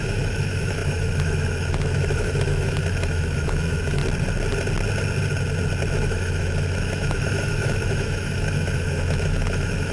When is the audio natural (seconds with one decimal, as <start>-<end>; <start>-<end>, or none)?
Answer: 4.0-5.9